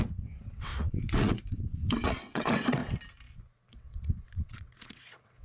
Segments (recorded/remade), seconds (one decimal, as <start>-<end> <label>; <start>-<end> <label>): 0.0-2.8 remade; 2.8-3.7 recorded; 3.7-5.4 remade